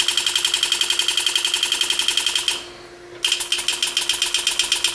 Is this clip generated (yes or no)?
no